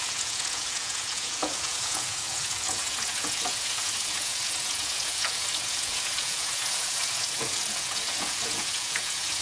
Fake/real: fake